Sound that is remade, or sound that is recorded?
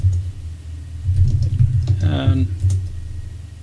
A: recorded